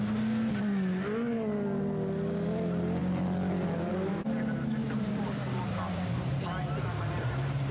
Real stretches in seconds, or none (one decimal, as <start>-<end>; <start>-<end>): 0.0-7.7